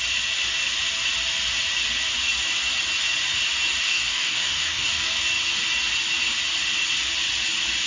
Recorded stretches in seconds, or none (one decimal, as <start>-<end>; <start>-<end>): 0.0-3.8; 5.2-7.9